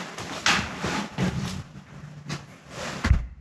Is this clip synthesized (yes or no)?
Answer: no